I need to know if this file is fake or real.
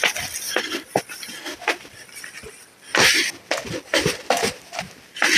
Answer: real